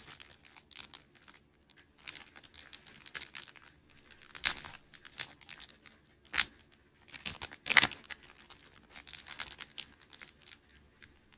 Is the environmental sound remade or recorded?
recorded